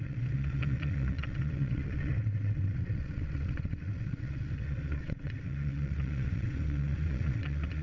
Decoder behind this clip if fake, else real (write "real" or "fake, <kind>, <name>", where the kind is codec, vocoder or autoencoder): fake, vocoder, WaveNeXt